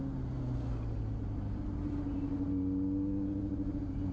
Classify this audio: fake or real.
real